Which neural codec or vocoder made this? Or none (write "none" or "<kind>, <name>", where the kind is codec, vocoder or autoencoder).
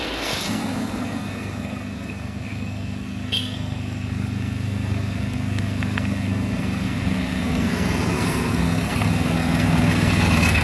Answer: codec, SNAC